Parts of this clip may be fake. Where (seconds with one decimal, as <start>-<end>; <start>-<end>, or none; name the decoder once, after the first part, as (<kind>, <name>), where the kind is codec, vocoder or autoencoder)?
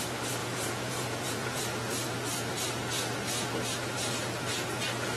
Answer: 0.4-1.6 (vocoder, Vocos)